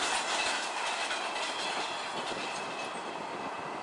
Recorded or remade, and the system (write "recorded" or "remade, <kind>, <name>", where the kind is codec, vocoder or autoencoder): recorded